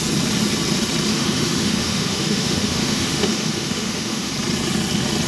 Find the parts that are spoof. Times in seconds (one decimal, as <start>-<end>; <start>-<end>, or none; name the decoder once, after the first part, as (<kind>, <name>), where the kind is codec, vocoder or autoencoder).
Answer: 1.1-4.3 (autoencoder, DAC-VAE)